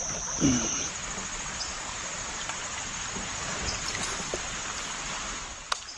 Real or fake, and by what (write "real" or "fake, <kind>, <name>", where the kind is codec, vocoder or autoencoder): real